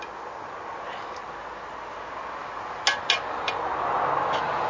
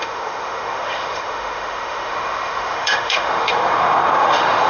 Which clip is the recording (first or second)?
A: first